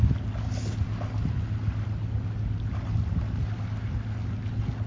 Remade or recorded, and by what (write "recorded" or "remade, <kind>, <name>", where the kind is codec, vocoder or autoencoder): recorded